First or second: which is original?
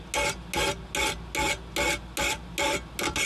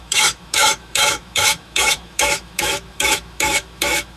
first